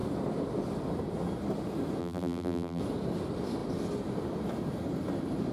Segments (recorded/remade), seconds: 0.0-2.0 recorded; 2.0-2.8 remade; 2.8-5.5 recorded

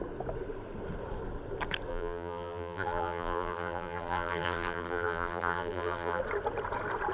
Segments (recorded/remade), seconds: 0.0-1.9 recorded; 1.9-6.2 remade; 6.2-7.1 recorded

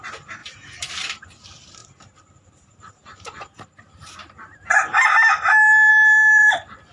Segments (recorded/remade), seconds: 0.0-6.9 remade